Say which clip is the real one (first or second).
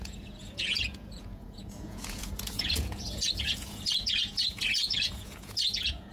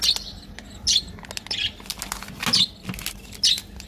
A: second